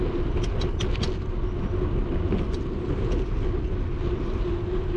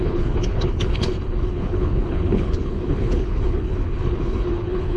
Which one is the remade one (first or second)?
second